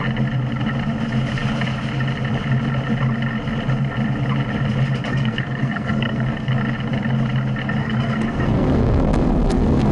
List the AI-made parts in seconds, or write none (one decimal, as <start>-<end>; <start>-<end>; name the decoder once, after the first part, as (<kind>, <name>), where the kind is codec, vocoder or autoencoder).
5.1-6.5 (codec, SNAC); 7.8-9.9